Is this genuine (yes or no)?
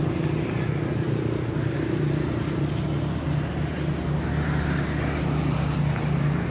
yes